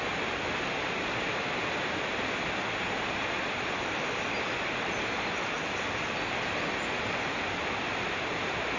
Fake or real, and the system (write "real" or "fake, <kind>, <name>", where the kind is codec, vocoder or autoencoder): real